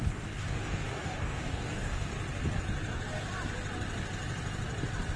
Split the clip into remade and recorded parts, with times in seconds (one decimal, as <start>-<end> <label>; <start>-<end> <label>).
0.0-2.1 remade; 2.1-5.2 recorded